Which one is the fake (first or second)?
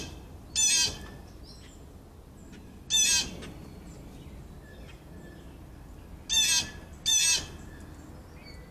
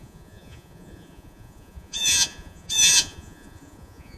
second